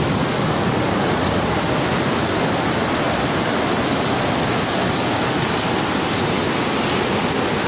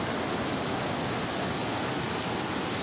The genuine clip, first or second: second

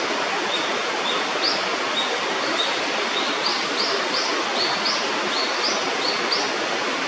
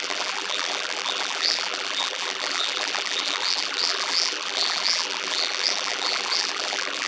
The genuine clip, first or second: first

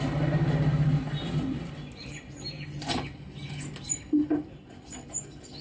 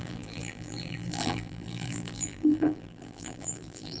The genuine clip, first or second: first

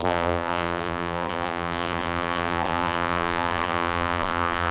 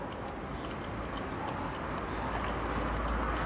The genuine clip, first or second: second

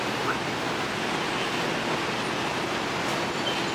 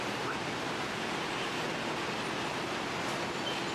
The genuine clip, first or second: first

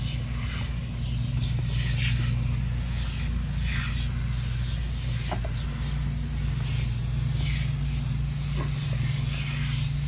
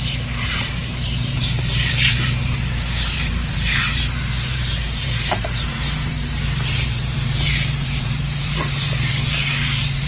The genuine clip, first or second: first